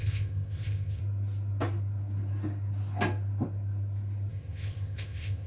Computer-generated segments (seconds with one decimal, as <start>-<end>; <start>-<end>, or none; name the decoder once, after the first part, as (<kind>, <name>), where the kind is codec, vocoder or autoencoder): 0.0-1.0 (codec, ZipCodec); 4.3-5.5